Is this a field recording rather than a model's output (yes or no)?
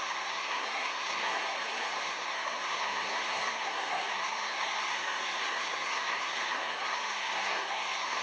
no